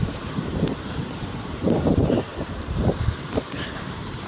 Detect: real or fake fake